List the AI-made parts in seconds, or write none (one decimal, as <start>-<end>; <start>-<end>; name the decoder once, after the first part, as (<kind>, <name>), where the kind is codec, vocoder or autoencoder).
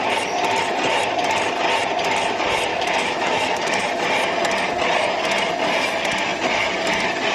2.7-3.8 (autoencoder, DAC-VAE)